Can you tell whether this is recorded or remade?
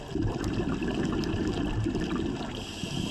recorded